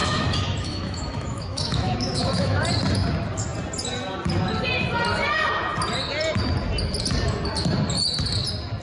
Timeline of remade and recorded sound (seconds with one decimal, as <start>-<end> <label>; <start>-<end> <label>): 0.0-2.6 remade; 2.6-8.8 recorded